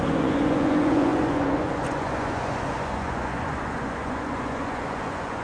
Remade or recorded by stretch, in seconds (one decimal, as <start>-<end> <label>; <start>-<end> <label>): 0.0-5.4 remade